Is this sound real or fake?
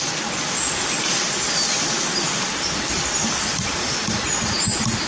real